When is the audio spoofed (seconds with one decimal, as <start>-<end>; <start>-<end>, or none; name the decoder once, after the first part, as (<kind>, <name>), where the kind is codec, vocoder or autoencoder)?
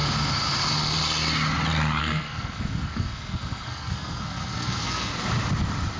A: 2.0-5.1 (codec, SNAC)